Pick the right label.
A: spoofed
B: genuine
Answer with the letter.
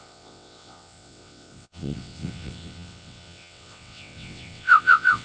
A